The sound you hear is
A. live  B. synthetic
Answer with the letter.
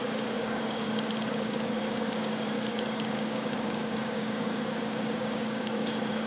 B